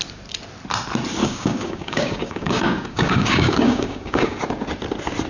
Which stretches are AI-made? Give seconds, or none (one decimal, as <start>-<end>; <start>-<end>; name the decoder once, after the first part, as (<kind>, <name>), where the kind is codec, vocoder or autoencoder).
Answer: 1.2-4.4 (codec, DAC)

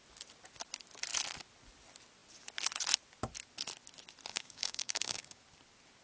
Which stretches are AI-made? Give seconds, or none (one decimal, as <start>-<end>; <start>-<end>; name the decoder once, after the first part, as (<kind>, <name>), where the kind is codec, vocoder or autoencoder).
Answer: 4.3-5.4 (codec, DAC)

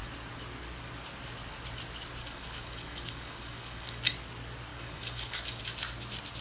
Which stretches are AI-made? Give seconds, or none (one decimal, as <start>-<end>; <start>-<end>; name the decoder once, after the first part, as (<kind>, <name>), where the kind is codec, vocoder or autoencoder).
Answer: 2.2-4.0 (codec, DAC); 4.7-5.6

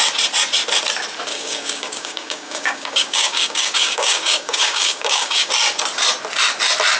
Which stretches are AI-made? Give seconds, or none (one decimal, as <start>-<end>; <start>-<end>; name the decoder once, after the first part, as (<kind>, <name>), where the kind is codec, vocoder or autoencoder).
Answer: 1.3-5.5 (codec, DAC)

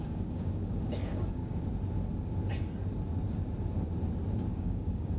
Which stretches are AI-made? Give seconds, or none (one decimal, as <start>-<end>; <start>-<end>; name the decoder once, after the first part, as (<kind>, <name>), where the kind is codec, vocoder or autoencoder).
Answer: 0.0-1.4 (codec, DAC); 4.5-5.2

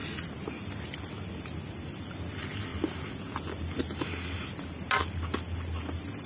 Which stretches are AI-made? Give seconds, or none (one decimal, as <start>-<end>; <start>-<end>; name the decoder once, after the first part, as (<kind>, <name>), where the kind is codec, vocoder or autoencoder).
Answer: none